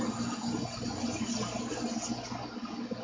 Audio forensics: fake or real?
real